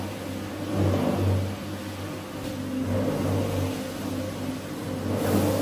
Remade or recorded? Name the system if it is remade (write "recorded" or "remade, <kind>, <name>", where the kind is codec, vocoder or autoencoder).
recorded